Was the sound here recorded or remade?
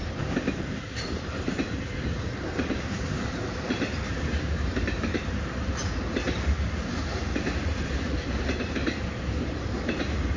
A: remade